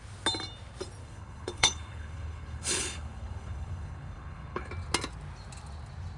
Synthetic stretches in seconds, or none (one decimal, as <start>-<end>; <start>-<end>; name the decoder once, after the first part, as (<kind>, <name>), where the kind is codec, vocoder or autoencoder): 1.0-4.7 (codec, HILCodec)